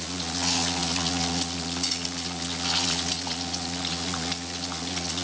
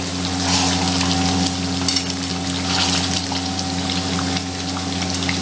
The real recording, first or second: second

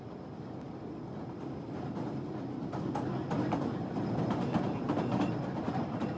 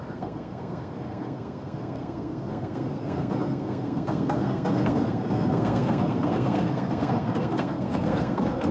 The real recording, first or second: first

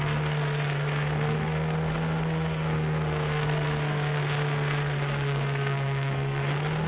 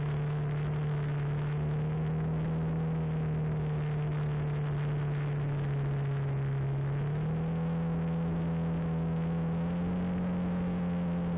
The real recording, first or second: second